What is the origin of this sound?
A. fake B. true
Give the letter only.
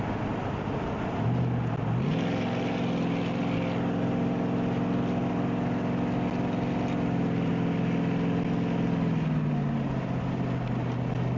B